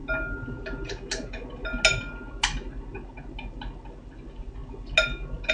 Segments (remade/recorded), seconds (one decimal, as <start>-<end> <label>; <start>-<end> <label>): 0.0-5.5 recorded